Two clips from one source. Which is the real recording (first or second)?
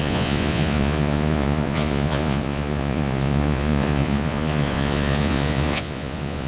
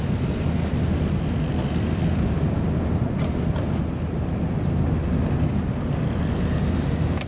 second